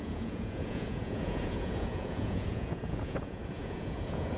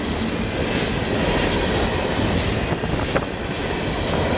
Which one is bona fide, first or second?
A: second